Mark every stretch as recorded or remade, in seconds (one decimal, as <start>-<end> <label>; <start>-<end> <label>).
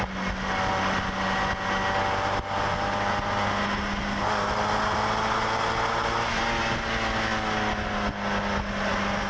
0.0-9.3 recorded